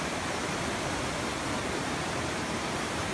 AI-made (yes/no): yes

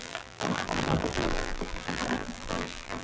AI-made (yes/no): yes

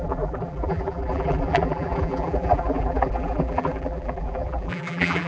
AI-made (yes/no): yes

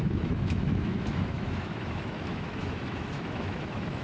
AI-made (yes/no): yes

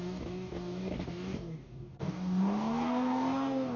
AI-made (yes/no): yes